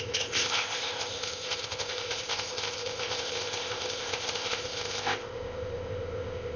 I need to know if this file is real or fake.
fake